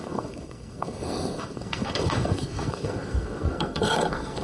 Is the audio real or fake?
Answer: fake